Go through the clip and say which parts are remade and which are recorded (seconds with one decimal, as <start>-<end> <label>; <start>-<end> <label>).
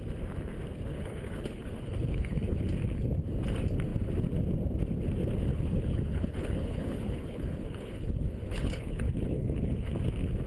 0.0-0.9 recorded; 0.9-2.6 remade; 2.6-5.5 recorded; 5.5-10.0 remade; 10.0-10.5 recorded